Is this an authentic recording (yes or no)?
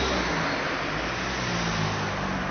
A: yes